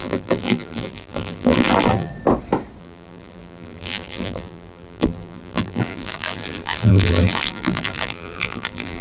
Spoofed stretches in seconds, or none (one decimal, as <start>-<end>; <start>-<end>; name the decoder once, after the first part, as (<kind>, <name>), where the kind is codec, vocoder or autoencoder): 0.0-2.1 (vocoder, BigVGAN v2); 2.8-9.0